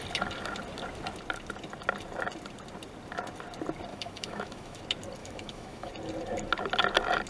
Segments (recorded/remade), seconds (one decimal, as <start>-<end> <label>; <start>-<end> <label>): 0.0-3.9 recorded; 3.9-4.8 remade; 4.8-5.2 recorded; 5.2-5.9 remade; 5.9-7.3 recorded